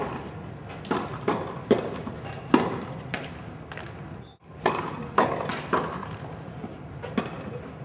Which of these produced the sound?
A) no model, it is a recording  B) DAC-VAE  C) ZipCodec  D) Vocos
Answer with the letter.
A